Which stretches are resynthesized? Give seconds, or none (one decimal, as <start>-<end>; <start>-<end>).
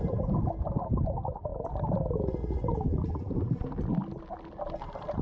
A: none